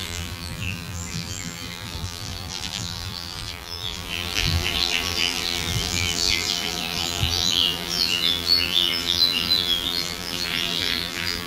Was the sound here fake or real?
fake